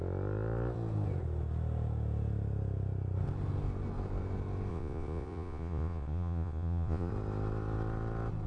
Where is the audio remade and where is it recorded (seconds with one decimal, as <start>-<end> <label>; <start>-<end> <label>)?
0.0-4.7 recorded; 4.7-7.1 remade; 7.1-8.5 recorded